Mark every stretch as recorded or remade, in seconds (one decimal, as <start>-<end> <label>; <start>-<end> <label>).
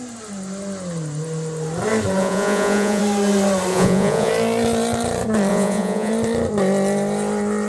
0.0-2.2 recorded; 2.2-3.0 remade; 3.0-3.7 recorded; 3.7-4.3 remade; 4.3-5.5 recorded; 5.5-6.1 remade; 6.1-7.7 recorded